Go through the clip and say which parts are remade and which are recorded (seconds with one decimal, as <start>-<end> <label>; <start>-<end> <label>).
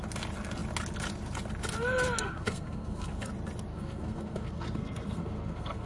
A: 0.0-2.2 recorded; 2.2-3.3 remade; 3.3-3.7 recorded; 3.7-5.9 remade